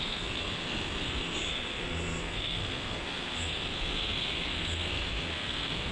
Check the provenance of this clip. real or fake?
fake